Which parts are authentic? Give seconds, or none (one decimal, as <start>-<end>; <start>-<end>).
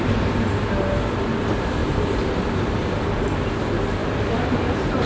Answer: 0.0-1.8; 3.5-4.0